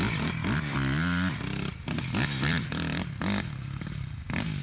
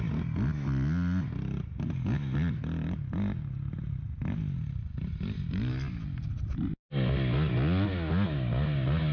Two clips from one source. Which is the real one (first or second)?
second